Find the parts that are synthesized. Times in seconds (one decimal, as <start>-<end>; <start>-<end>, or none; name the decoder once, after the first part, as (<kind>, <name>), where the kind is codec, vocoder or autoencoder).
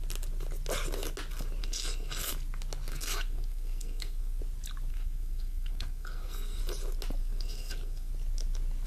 1.6-2.3 (codec, SNAC); 2.9-4.4; 4.9-6.6; 7.2-8.1